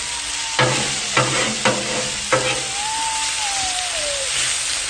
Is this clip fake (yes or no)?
no